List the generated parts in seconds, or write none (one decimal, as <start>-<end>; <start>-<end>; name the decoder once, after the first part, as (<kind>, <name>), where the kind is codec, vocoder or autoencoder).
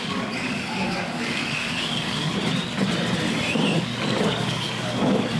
0.0-2.3 (codec, DAC); 3.8-5.4